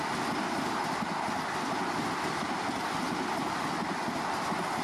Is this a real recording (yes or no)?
yes